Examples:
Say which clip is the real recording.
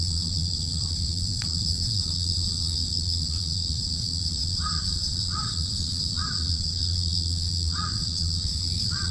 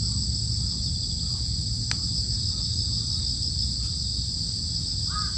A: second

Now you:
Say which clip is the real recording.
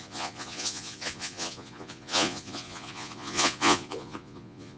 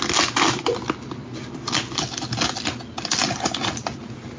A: second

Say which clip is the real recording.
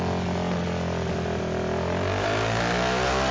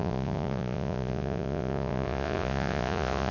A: first